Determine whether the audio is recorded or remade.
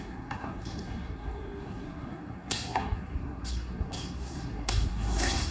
remade